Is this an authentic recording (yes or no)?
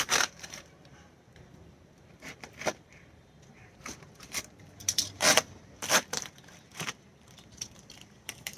no